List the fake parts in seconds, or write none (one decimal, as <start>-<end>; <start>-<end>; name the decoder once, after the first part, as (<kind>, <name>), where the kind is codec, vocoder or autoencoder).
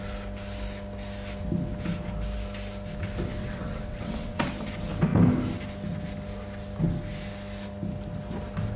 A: 3.4-4.5 (vocoder, WaveNeXt)